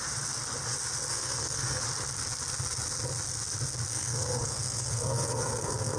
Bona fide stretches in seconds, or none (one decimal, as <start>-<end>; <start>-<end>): 0.0-1.1; 1.8-3.9